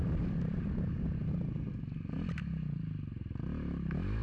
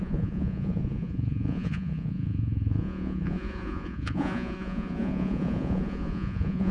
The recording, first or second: first